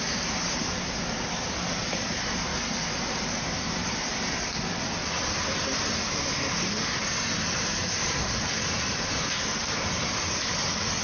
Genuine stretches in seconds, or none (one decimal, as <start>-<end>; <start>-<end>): 2.5-3.0; 4.1-5.2